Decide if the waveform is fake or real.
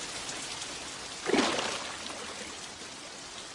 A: real